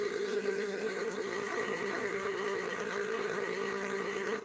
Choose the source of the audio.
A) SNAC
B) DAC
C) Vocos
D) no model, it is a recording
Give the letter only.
A